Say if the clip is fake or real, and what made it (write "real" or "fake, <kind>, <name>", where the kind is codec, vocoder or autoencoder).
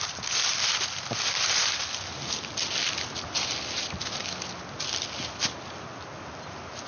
real